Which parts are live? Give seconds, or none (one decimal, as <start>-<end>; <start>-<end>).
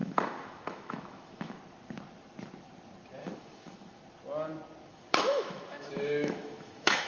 1.6-3.2; 4.0-4.9